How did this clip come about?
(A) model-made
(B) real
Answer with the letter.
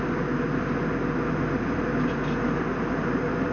B